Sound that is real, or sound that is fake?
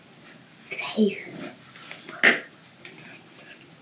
real